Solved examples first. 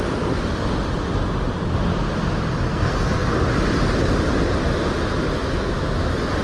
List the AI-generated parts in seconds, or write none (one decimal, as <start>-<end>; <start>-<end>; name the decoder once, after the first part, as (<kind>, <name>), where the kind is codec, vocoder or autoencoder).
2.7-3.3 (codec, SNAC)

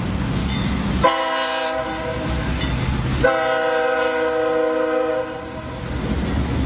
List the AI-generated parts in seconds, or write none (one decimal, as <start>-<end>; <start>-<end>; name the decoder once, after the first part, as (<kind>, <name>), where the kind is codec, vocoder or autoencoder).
0.4-0.9 (autoencoder, DAC-VAE)

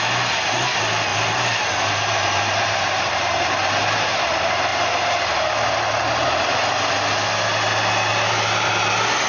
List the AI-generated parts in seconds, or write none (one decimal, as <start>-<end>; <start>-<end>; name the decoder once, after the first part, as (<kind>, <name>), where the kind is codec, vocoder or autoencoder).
1.1-4.1 (vocoder, BigVGAN v2); 8.1-8.7